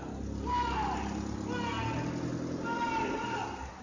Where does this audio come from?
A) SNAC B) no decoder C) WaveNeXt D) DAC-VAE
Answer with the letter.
B